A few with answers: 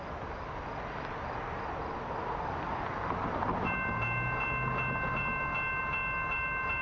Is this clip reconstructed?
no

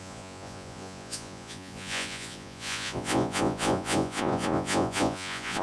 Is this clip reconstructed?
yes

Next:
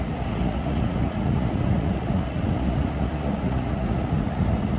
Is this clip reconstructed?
yes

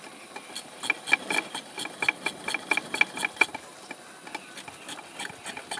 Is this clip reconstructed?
no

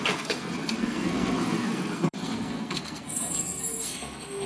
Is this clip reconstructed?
yes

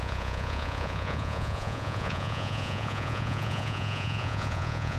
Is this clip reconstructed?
yes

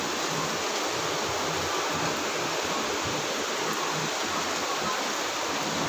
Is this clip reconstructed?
no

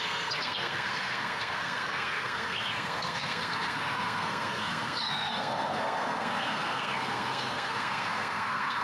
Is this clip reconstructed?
yes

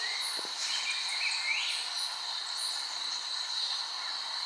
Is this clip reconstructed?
no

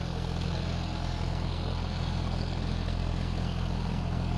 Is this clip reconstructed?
yes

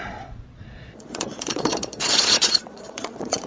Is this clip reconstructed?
yes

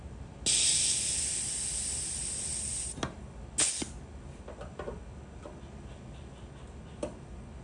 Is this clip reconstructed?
no